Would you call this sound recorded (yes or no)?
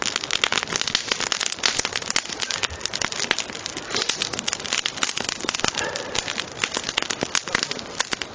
yes